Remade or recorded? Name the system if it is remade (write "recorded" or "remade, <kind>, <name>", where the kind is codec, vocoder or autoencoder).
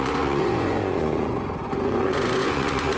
remade, vocoder, Vocos